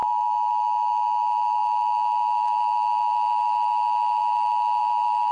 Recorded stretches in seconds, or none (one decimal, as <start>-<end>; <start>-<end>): none

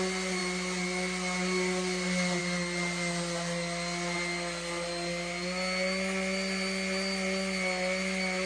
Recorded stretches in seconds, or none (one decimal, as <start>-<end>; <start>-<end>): 0.0-8.5

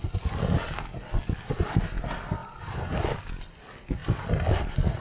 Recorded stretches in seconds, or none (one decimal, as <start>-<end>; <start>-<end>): 0.0-5.0

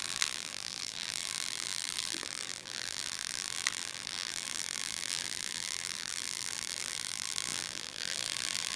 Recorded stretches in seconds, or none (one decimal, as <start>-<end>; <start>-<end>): none

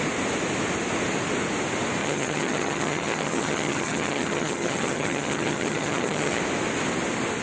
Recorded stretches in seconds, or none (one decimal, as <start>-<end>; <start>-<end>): 0.0-2.0; 6.4-7.4

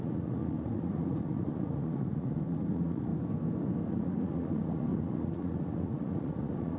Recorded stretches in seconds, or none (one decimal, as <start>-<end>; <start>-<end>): 3.1-3.9

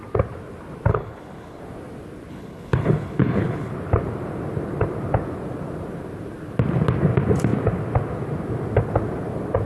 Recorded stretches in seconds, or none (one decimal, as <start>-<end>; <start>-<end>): 0.0-0.9; 1.6-2.3; 3.7-9.7

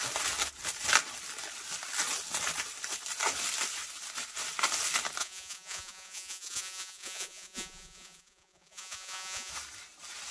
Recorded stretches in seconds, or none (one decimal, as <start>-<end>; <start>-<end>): 0.0-5.2; 9.5-10.3